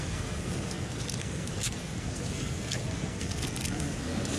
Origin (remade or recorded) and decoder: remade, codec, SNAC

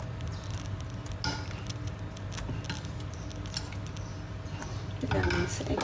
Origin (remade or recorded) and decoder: recorded